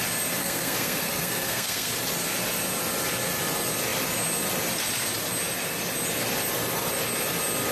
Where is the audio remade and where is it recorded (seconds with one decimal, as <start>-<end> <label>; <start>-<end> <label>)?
0.0-0.4 recorded; 0.4-1.9 remade; 1.9-7.7 recorded